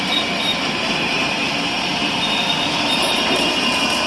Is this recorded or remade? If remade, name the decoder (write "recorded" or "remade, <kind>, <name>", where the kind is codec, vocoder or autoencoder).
remade, vocoder, BigVGAN v2